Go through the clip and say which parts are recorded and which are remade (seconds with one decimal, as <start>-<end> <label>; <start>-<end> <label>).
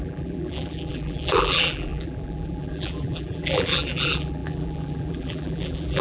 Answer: 0.0-6.0 remade